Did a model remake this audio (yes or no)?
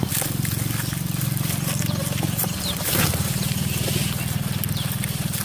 no